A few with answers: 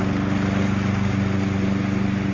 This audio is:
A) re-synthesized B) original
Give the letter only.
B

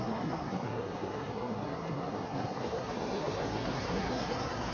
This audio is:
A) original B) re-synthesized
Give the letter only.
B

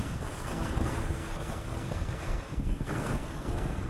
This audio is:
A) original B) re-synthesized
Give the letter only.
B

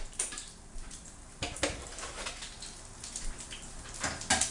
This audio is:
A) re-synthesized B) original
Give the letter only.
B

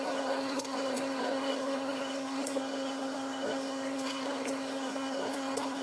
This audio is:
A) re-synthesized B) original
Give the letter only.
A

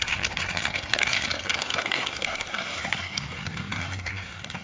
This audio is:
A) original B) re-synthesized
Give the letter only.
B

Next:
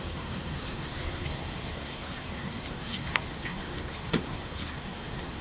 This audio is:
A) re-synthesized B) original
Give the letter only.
A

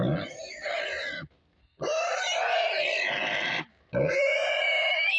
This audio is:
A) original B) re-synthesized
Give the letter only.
A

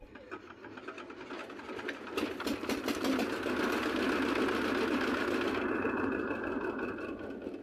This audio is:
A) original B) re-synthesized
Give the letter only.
A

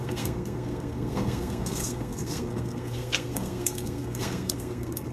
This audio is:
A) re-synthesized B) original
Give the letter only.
A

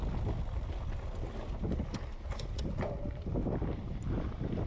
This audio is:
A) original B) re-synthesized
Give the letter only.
A